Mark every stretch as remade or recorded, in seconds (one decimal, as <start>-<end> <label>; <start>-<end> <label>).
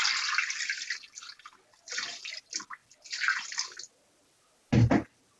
0.0-5.4 recorded